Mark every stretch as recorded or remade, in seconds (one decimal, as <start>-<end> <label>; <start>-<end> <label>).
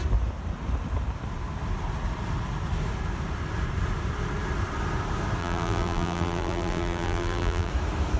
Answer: 0.0-5.4 recorded; 5.4-7.7 remade; 7.7-8.2 recorded